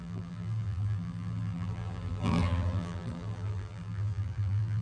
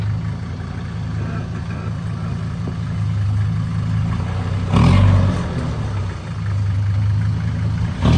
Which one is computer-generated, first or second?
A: first